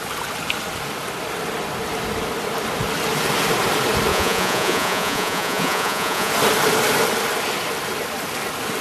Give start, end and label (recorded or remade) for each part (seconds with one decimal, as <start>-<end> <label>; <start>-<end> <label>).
0.0-4.1 recorded; 4.1-6.3 remade; 6.3-8.8 recorded